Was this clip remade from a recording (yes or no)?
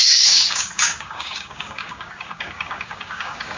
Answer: yes